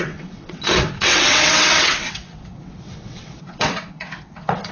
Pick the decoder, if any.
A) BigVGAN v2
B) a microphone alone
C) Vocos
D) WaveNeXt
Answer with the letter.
D